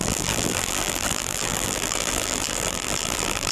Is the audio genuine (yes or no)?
no